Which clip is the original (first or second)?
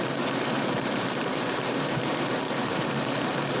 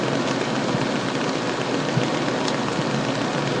second